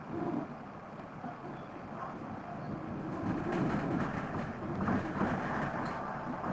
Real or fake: real